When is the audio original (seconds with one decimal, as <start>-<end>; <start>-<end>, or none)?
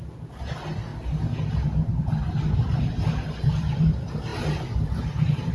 0.9-2.3